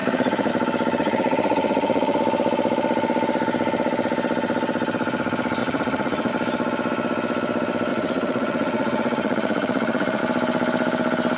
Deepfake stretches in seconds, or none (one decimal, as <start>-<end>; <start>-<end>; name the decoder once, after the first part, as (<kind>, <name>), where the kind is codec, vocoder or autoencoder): 0.0-0.5 (vocoder, Vocos); 1.0-2.2; 5.6-6.3; 7.9-10.2